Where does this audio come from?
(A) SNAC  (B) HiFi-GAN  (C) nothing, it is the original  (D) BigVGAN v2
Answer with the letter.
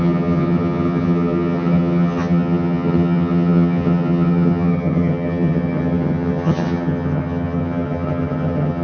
B